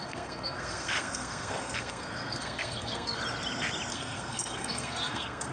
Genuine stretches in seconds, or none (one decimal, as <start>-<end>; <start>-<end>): 3.2-3.9